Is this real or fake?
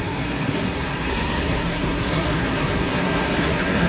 fake